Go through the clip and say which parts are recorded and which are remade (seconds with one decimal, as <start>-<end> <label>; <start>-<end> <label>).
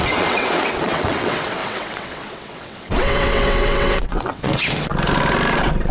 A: 0.0-4.9 remade; 4.9-5.5 recorded; 5.5-5.9 remade